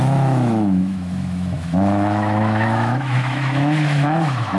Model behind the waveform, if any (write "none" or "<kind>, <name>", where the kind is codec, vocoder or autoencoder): autoencoder, DAC-VAE